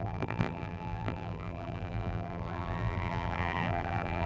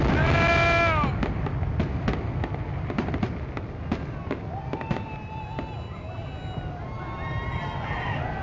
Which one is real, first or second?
second